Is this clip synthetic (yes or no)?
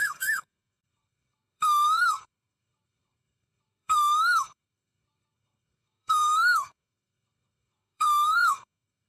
yes